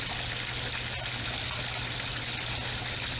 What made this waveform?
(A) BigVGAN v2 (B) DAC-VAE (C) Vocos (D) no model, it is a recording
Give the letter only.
D